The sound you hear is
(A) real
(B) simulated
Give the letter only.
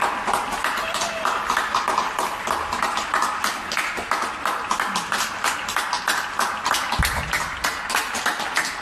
A